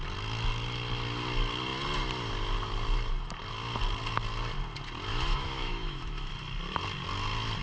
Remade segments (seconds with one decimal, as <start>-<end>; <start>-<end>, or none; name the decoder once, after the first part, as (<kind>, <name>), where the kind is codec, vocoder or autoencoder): 5.1-6.3 (autoencoder, DAC-VAE)